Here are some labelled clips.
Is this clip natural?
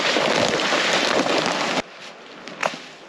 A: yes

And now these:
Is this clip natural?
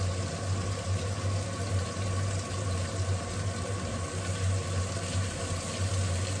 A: yes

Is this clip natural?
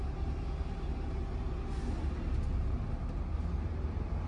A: yes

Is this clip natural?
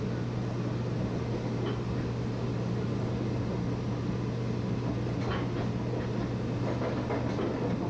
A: yes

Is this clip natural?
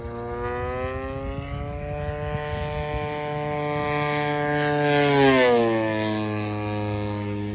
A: yes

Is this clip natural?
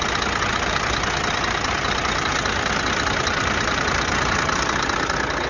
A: yes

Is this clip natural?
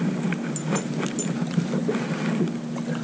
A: yes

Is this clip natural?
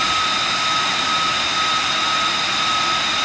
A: yes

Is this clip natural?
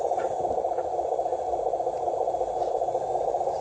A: yes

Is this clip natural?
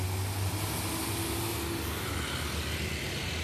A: yes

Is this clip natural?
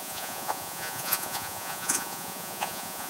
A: no